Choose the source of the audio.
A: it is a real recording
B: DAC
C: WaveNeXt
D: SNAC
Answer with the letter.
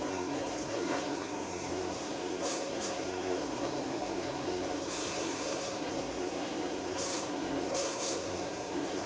D